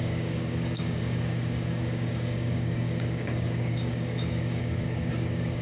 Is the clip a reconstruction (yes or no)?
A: yes